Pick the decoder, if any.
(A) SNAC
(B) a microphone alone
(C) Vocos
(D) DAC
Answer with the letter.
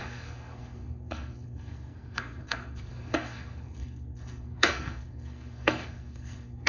A